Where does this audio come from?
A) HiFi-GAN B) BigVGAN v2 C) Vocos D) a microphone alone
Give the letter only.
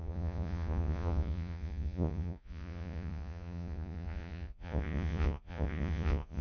C